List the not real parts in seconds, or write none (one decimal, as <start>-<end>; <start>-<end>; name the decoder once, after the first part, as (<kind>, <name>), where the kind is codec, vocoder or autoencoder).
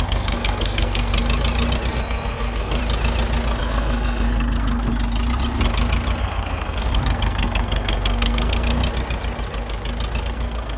0.0-1.1 (codec, SNAC); 1.9-2.8; 3.6-4.9; 6.2-8.8; 10.2-10.8